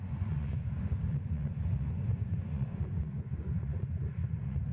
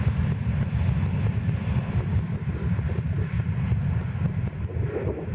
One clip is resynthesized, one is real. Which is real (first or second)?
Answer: second